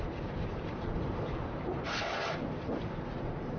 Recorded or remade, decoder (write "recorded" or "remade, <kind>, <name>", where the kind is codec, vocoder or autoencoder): remade, vocoder, BigVGAN v2